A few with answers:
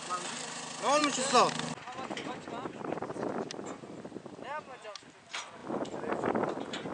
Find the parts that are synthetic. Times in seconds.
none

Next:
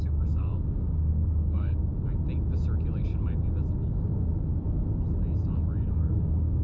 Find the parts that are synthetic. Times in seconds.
0.0-1.9 (codec, DAC); 5.9-6.6